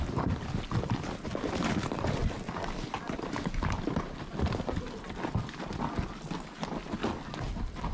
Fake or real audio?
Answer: real